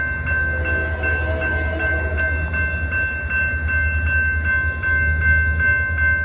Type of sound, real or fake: real